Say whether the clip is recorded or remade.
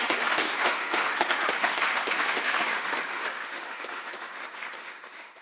remade